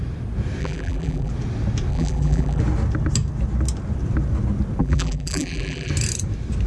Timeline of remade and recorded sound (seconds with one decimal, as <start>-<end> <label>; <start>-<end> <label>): 0.0-0.6 recorded; 0.6-1.3 remade; 1.3-1.9 recorded; 1.9-2.6 remade; 2.6-4.8 recorded; 4.8-5.9 remade; 5.9-6.7 recorded